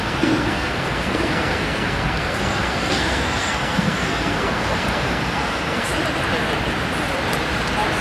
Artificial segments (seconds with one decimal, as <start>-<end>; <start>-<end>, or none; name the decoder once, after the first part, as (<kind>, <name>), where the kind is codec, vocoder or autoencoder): 0.0-5.9 (codec, SNAC)